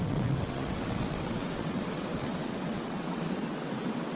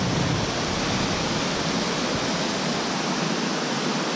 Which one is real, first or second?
second